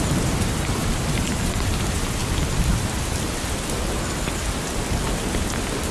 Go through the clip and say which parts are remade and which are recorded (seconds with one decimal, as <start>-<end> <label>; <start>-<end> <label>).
0.0-2.2 remade; 2.2-5.9 recorded